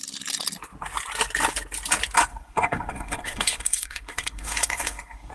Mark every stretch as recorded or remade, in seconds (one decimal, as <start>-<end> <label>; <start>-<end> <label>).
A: 0.0-2.3 recorded; 2.3-5.3 remade